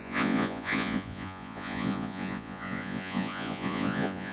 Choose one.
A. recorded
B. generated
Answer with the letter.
B